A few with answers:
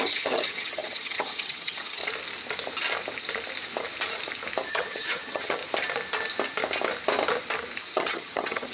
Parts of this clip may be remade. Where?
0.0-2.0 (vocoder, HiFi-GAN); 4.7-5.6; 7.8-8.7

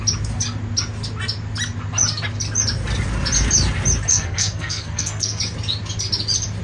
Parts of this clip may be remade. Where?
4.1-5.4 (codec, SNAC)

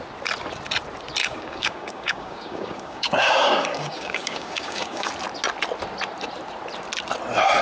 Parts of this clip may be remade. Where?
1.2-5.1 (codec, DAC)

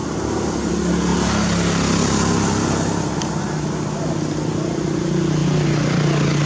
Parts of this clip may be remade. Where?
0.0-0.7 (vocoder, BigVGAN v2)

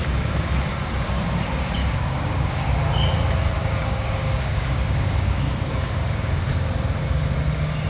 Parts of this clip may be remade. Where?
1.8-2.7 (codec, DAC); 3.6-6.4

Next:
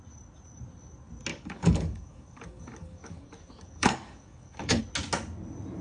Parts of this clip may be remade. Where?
1.3-4.8 (codec, DAC)